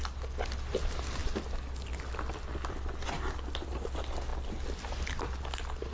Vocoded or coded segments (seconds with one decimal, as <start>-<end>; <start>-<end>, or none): none